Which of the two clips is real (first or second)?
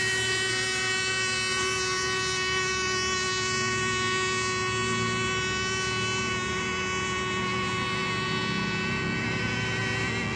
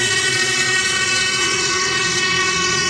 first